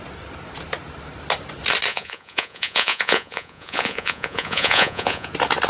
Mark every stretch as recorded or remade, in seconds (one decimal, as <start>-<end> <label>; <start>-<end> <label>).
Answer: 0.0-1.9 recorded; 1.9-5.3 remade; 5.3-5.7 recorded